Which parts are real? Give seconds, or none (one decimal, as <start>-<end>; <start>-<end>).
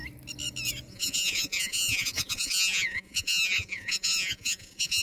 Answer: 0.0-0.9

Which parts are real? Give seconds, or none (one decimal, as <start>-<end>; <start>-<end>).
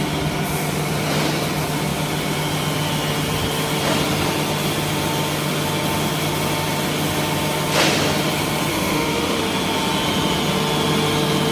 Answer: 0.0-8.7; 9.4-11.5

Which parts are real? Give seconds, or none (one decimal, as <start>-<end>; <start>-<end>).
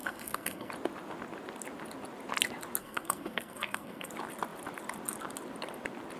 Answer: 0.7-2.8; 4.1-6.2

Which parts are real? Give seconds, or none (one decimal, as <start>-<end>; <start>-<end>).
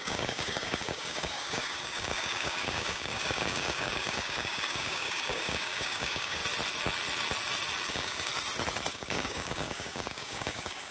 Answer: 6.4-7.9; 8.3-8.9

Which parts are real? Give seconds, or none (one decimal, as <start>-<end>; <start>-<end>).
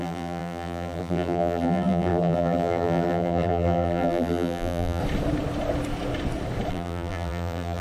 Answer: 5.0-6.7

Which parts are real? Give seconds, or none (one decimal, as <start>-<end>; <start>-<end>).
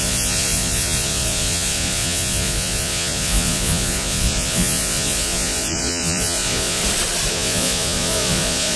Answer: 6.8-7.3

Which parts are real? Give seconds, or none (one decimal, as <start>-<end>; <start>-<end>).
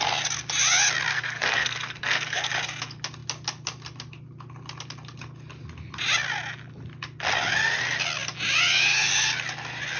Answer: 0.0-1.1; 2.5-10.0